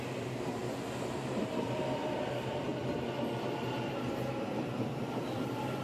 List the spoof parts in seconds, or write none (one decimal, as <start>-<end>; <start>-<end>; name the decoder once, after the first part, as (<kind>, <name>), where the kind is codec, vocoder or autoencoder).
0.0-0.6 (vocoder, BigVGAN v2); 1.1-2.7; 4.4-5.8